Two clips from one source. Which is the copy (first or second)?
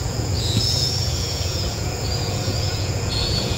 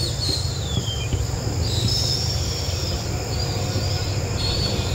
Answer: first